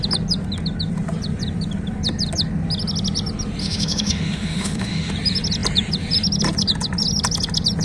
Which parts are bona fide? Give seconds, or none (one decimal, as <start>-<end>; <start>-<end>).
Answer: 0.0-3.6; 5.1-7.8